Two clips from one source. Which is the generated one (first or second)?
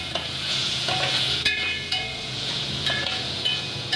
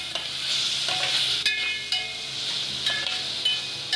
first